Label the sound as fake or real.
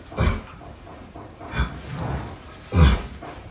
real